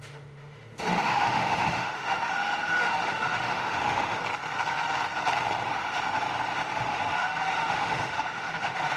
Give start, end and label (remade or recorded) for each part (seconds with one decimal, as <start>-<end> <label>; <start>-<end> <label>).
0.0-4.2 remade; 4.2-5.6 recorded; 5.6-9.0 remade